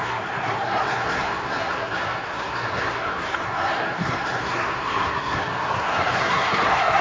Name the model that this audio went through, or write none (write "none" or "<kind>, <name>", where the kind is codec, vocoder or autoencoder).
codec, SNAC